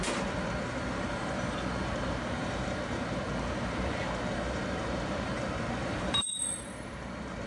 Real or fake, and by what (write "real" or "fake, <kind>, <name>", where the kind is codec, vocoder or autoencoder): fake, vocoder, BigVGAN v2